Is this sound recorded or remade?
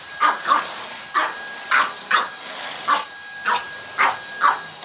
recorded